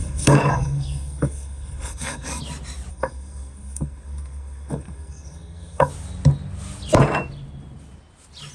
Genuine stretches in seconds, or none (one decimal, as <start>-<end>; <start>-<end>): 2.4-2.9; 5.9-8.5